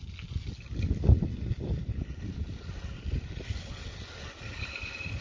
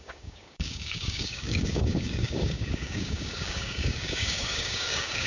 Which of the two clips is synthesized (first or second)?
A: second